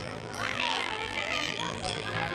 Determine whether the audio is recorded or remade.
remade